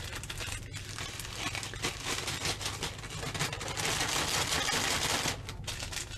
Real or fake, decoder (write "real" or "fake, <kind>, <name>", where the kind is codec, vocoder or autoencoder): real